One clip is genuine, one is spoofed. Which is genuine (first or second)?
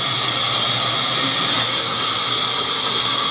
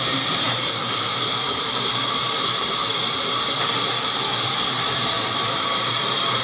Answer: first